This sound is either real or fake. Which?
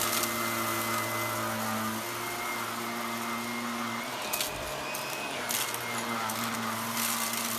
real